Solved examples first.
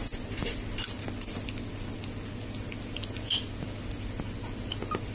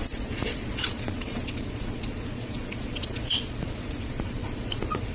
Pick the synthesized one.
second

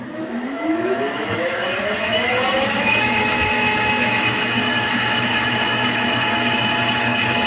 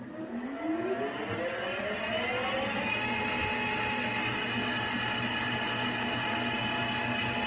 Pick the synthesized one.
first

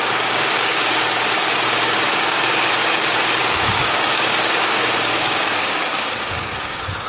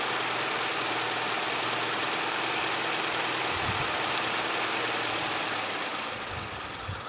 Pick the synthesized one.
first